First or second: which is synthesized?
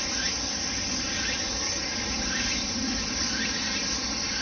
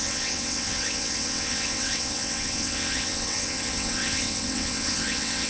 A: second